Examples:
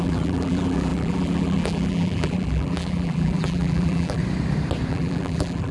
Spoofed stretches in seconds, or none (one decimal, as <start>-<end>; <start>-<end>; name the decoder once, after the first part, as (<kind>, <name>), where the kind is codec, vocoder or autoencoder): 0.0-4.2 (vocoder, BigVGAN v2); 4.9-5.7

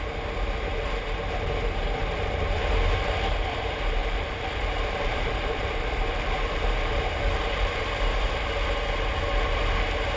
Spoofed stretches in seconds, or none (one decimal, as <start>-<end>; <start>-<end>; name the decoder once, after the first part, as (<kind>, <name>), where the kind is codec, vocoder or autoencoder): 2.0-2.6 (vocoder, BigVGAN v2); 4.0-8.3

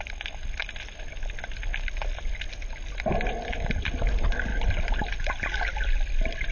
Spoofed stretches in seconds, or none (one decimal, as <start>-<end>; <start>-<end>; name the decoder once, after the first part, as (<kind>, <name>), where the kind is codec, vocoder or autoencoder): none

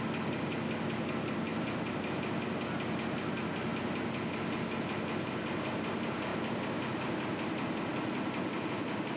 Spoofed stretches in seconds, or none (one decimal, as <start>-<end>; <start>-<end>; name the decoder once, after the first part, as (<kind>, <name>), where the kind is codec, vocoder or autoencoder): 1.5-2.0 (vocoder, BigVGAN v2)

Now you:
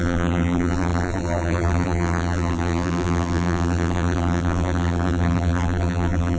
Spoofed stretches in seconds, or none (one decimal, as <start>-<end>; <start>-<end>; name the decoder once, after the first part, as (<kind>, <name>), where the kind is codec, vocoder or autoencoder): 0.0-6.4 (vocoder, BigVGAN v2)